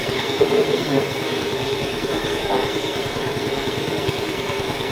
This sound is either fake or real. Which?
fake